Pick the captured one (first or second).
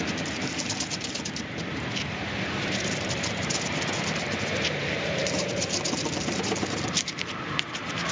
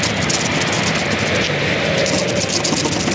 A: second